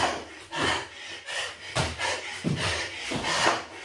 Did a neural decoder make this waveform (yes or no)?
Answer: no